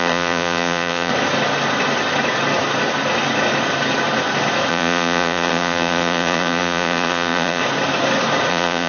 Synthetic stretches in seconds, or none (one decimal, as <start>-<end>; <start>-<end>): 0.0-1.1; 4.7-7.6; 8.5-8.9